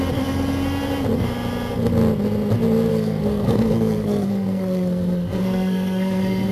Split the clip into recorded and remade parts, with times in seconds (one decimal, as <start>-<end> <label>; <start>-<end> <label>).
0.0-2.9 recorded; 2.9-6.5 remade